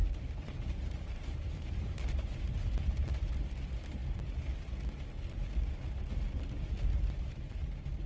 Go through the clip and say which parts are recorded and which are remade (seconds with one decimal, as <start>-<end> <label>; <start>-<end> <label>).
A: 0.0-2.8 remade; 2.8-8.1 recorded